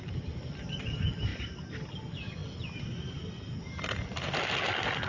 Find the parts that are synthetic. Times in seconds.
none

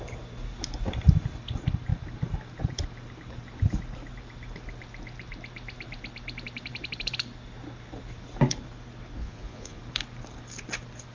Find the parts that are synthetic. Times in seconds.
9.2-9.8 (vocoder, Vocos)

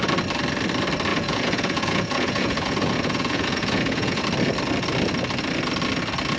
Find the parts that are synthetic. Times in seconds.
1.1-4.2 (vocoder, Vocos)

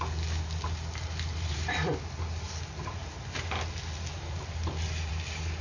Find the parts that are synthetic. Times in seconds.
1.3-1.9 (vocoder, BigVGAN v2)

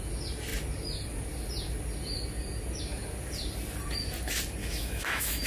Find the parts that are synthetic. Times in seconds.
4.6-5.5 (autoencoder, DAC-VAE)